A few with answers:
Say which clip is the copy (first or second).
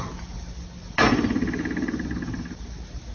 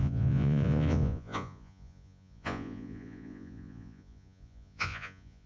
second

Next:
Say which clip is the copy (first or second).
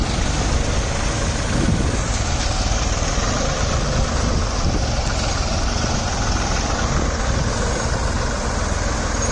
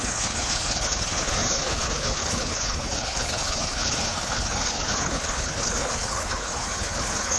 second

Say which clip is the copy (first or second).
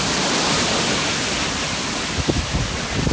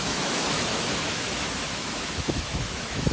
second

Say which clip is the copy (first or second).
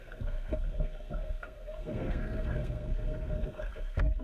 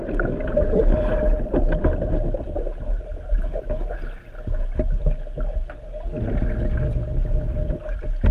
first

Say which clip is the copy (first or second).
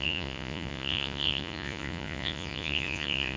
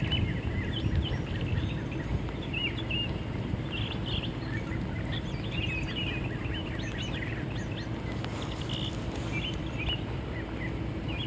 first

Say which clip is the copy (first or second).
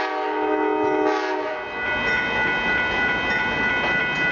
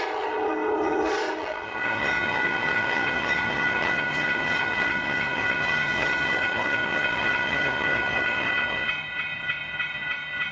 second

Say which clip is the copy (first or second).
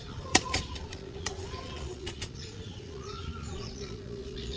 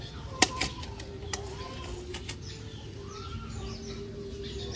first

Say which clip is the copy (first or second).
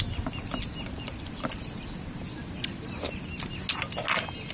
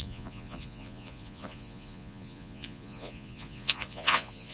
second